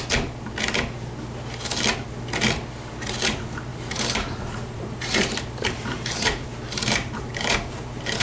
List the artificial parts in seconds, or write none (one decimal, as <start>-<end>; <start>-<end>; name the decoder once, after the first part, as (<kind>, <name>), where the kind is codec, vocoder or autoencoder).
3.7-8.2 (vocoder, BigVGAN v2)